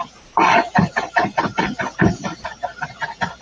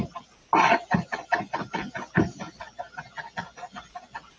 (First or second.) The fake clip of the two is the first